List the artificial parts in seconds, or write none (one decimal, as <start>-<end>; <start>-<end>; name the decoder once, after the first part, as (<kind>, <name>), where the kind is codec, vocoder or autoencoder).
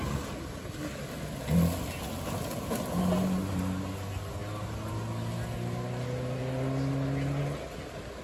none